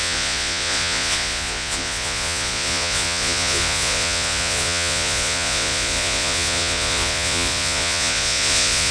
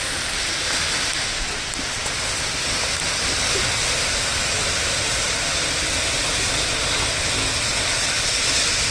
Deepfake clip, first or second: first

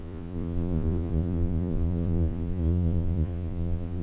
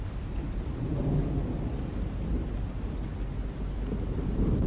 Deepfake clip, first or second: first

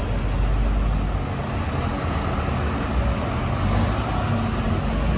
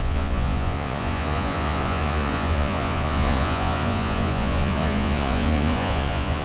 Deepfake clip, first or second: second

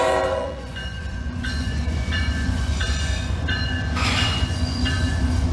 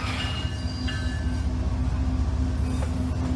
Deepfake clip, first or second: first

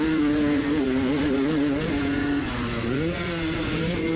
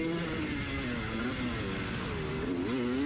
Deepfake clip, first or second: first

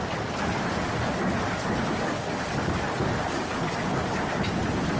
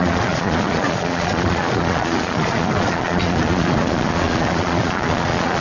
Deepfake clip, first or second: second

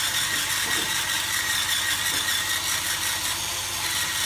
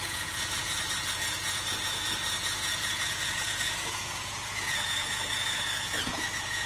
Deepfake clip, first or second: second